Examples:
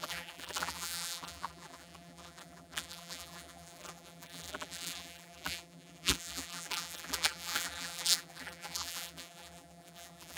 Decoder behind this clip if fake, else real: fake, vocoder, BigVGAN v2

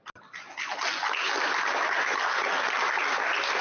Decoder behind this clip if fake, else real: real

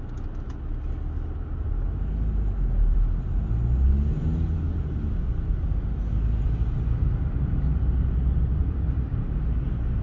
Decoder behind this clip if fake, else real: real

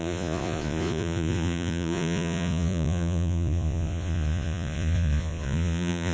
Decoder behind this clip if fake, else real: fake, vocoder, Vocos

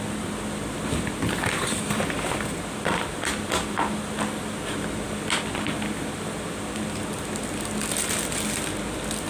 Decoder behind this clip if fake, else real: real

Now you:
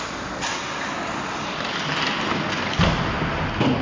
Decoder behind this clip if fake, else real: real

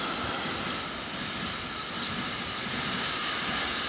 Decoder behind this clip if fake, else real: real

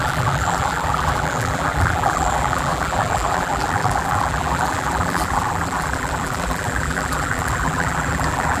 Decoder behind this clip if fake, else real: fake, vocoder, BigVGAN v2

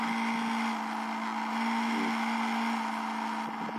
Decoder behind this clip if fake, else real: real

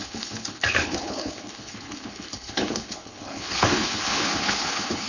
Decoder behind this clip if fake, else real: fake, codec, HILCodec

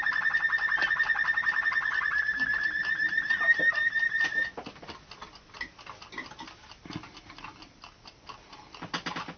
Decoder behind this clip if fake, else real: real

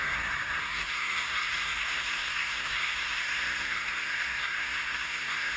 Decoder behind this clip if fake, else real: fake, codec, SNAC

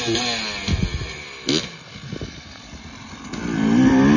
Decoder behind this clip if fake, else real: real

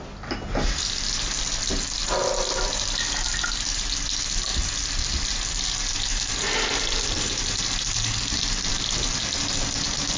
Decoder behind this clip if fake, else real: real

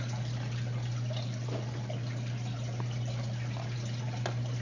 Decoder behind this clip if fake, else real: real